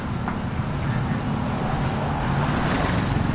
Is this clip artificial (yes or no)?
no